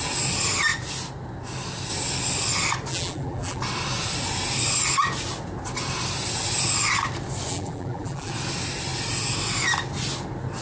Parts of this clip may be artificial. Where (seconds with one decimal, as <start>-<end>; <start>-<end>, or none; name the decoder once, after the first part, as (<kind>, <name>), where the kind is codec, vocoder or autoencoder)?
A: 2.9-3.6 (vocoder, BigVGAN v2); 7.5-8.3